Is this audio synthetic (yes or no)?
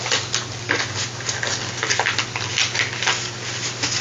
no